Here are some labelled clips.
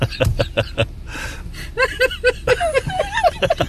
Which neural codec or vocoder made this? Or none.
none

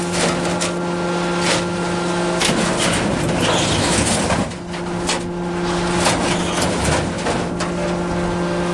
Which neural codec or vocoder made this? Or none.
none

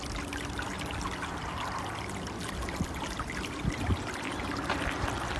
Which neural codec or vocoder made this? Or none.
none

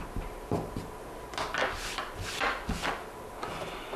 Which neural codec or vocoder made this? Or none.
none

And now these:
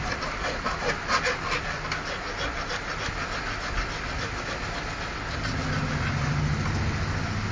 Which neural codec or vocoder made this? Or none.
none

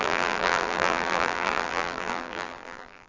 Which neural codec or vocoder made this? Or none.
vocoder, BigVGAN v2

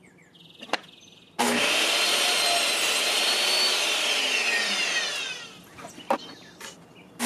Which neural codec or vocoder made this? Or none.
none